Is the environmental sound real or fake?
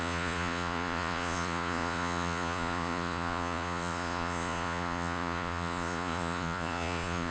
fake